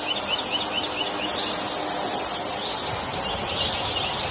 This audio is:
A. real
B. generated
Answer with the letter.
A